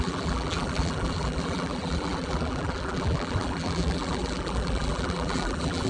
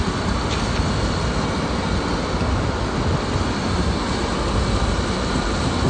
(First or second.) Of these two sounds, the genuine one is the second